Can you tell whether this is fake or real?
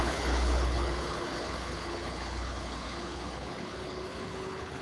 fake